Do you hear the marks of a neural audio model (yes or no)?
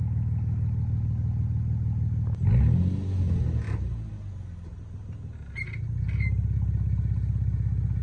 no